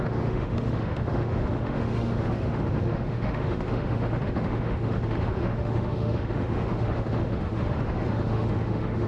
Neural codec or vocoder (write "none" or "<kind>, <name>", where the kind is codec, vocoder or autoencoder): autoencoder, DAC-VAE